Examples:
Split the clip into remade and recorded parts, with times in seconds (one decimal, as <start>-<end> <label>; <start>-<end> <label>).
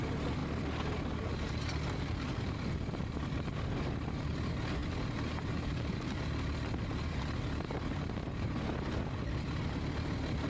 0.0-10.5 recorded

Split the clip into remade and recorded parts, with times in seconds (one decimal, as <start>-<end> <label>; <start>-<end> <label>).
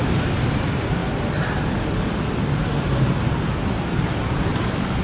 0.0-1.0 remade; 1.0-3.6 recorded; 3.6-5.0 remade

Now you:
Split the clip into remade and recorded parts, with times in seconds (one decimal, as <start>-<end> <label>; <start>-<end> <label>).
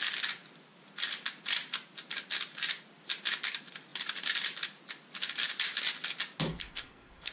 0.0-6.5 recorded; 6.5-7.3 remade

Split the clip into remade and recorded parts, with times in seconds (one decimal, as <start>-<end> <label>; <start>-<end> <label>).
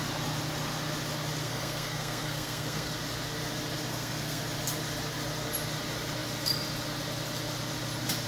0.0-1.4 recorded; 1.4-2.9 remade; 2.9-3.9 recorded; 3.9-4.4 remade; 4.4-8.3 recorded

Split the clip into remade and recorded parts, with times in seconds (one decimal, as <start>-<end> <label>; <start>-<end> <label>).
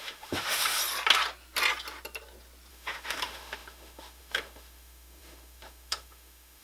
0.0-0.8 remade; 0.8-2.7 recorded; 2.7-6.6 remade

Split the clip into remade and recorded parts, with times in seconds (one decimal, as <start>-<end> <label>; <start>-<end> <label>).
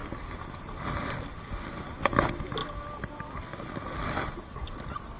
0.0-5.2 recorded